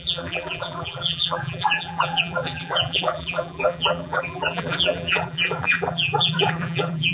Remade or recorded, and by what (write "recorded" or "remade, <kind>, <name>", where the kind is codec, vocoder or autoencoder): remade, vocoder, BigVGAN v2